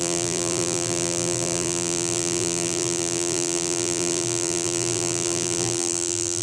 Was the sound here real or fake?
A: fake